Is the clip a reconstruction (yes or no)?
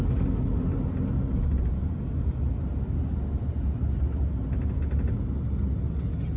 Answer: no